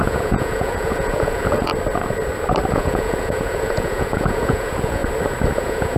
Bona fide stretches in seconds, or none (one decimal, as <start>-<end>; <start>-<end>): 1.7-2.7; 5.0-5.5